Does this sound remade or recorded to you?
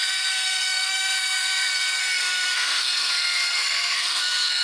remade